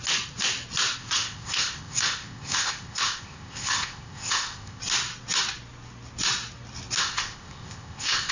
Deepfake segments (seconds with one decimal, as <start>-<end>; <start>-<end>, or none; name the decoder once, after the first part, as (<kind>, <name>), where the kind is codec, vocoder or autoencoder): 1.0-4.8 (codec, ZipCodec); 7.0-8.3